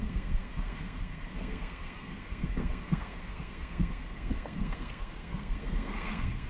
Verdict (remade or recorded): remade